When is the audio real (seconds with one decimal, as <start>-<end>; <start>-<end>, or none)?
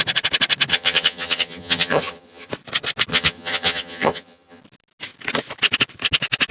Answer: 0.0-0.7; 2.5-3.1; 4.6-6.5